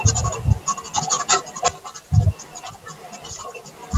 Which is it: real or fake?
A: real